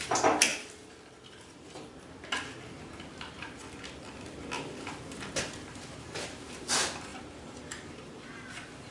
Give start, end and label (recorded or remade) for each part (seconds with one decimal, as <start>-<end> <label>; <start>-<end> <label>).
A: 0.0-8.9 recorded